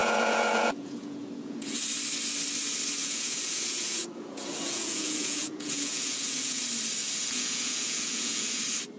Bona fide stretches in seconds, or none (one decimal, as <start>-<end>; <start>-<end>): 1.8-3.0; 6.6-7.0; 8.6-9.0